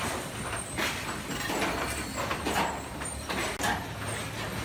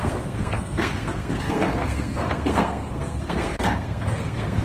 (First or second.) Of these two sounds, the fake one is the second